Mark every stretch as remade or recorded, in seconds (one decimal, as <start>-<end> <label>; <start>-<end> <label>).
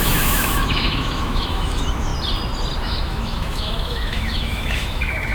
0.0-2.1 remade; 2.1-2.8 recorded; 2.8-5.3 remade